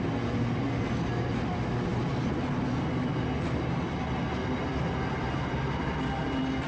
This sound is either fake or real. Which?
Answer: real